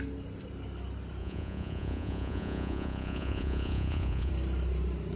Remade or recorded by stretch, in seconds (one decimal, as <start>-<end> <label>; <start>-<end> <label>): 0.0-1.2 recorded; 1.2-4.3 remade; 4.3-5.2 recorded

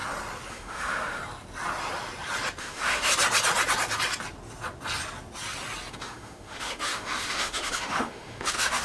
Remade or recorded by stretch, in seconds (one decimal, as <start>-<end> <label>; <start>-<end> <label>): 0.0-0.5 recorded; 0.5-1.2 remade; 1.2-2.6 recorded; 2.6-3.1 remade; 3.1-5.9 recorded; 5.9-8.8 remade

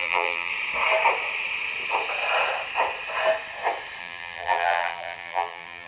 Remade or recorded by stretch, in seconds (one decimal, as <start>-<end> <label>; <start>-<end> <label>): 0.0-0.5 remade; 0.5-4.0 recorded; 4.0-5.9 remade

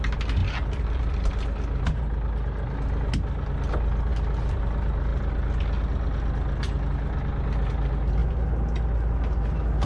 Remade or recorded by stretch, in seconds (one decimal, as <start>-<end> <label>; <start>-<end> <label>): 0.0-0.4 recorded; 0.4-2.0 remade; 2.0-4.1 recorded; 4.1-4.6 remade; 4.6-9.9 recorded

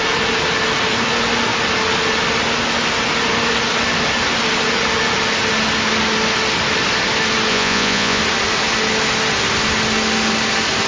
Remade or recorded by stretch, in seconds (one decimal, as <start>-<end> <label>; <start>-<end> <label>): 0.0-7.5 recorded; 7.5-8.2 remade; 8.2-10.9 recorded

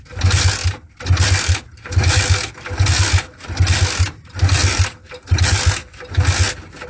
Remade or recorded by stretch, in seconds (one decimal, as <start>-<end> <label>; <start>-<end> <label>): 0.0-6.9 recorded

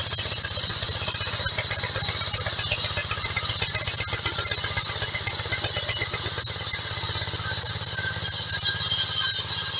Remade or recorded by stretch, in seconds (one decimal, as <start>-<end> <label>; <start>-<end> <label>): 0.0-9.8 recorded